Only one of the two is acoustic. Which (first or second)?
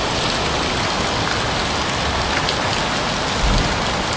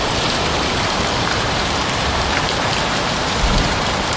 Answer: first